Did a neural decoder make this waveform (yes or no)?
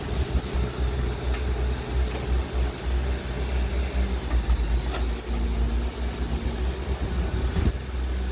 no